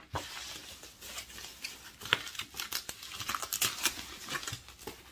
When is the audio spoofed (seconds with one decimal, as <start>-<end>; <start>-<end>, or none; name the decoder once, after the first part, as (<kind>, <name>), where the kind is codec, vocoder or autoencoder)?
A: none